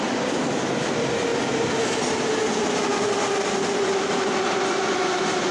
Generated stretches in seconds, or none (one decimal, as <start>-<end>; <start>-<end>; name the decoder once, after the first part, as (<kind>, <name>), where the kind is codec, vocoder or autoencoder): none